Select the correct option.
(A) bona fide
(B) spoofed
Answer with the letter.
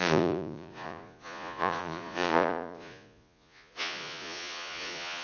B